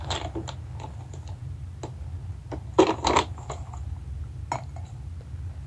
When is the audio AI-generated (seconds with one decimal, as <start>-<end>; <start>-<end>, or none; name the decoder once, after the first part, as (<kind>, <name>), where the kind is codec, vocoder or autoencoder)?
none